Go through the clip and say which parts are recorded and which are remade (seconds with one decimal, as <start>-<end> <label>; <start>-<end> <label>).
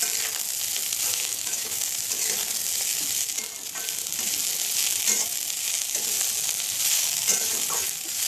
0.0-1.1 recorded; 1.1-1.8 remade; 1.8-8.3 recorded